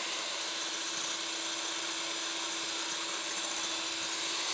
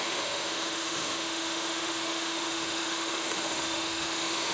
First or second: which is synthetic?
second